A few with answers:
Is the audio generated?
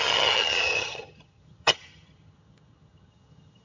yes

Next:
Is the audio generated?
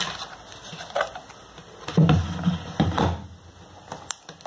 no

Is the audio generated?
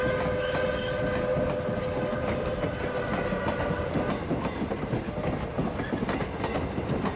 no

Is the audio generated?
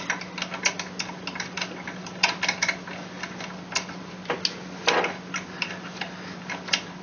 no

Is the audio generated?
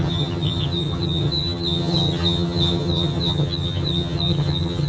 yes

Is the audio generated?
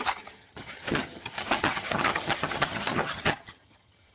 yes